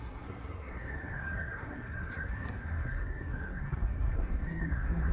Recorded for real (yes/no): no